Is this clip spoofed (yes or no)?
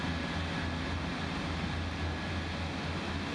no